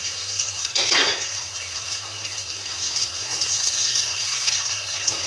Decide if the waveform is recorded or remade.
remade